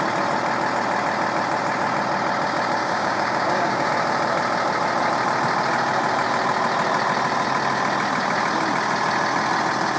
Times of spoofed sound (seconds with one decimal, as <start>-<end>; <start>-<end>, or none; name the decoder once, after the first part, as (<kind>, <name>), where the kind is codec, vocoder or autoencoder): 2.8-3.9 (codec, DAC)